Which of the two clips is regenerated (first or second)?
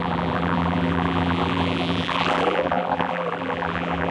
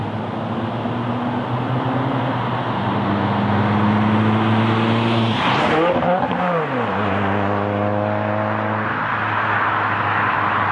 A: first